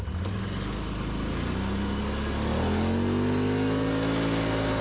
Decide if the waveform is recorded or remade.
recorded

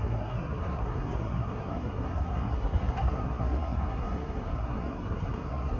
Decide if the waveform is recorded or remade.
remade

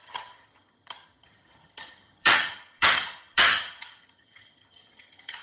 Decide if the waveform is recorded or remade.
remade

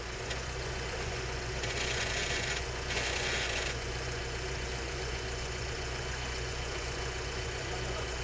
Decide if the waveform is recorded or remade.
remade